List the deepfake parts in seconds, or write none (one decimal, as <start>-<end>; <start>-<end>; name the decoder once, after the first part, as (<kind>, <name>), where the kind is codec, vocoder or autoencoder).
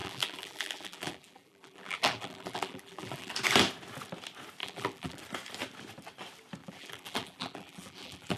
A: 0.0-3.3 (vocoder, BigVGAN v2); 4.6-5.2; 6.6-8.4